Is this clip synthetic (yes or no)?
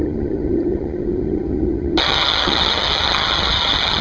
yes